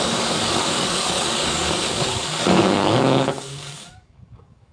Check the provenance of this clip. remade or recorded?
remade